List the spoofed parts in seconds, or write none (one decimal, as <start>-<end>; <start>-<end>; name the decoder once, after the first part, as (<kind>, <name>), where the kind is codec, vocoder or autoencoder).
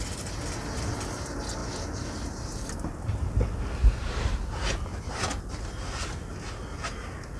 none